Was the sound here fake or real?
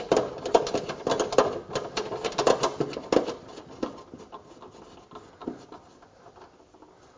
real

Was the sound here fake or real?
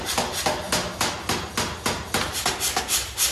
real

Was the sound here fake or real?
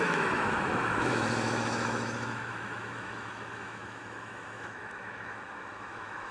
fake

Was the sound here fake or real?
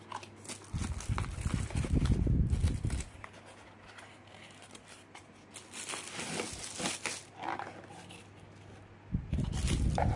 real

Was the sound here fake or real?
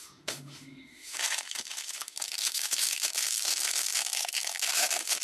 fake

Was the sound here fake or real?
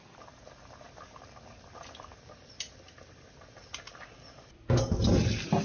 real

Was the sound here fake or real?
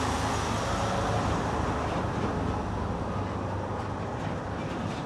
real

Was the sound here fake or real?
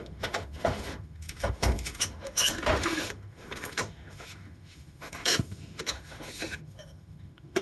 fake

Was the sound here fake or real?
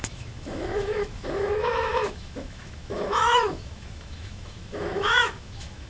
fake